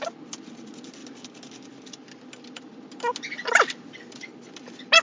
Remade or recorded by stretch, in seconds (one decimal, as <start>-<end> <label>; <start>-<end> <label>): 0.0-5.0 recorded